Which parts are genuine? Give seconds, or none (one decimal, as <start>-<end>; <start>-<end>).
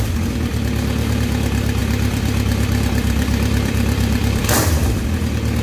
0.0-1.8; 5.0-5.6